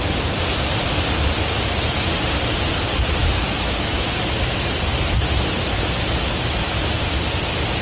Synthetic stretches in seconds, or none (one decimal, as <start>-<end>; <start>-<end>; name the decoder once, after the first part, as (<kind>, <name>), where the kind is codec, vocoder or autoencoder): 3.2-4.2 (autoencoder, DAC-VAE)